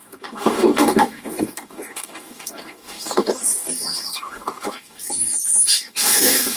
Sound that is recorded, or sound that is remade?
remade